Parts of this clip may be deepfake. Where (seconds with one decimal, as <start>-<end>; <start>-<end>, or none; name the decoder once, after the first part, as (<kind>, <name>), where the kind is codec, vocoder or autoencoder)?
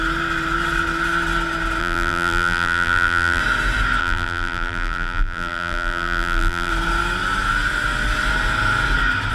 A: 1.8-3.4 (vocoder, BigVGAN v2); 4.0-6.7